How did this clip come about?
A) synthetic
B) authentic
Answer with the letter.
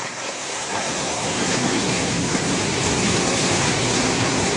A